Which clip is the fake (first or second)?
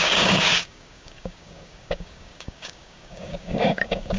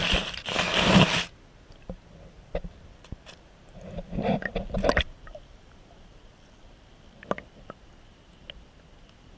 first